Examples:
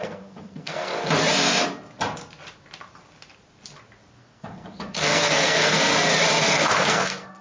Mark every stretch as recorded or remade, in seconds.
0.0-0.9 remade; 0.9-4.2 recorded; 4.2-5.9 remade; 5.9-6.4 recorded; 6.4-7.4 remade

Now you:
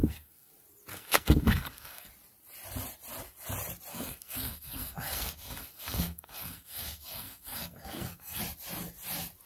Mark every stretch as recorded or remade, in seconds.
0.0-0.5 remade; 0.5-0.9 recorded; 0.9-2.1 remade; 2.1-3.9 recorded; 3.9-8.4 remade; 8.4-9.5 recorded

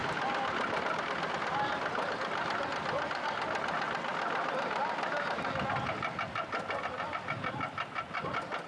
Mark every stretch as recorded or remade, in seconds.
0.0-8.7 recorded

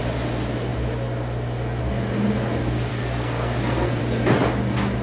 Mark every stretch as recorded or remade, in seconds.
0.0-2.9 recorded; 2.9-4.0 remade; 4.0-5.0 recorded

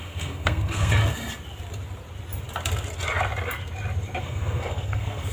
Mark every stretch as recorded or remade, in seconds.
0.0-1.0 remade; 1.0-4.2 recorded; 4.2-5.3 remade

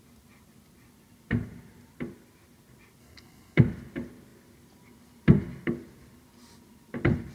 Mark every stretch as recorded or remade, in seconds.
0.0-3.0 recorded; 3.0-3.6 remade; 3.6-7.3 recorded